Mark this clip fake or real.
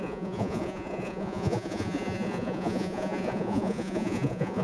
fake